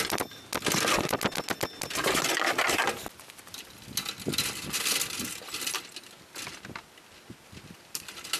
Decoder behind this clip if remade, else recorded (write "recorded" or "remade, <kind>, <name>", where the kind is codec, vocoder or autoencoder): recorded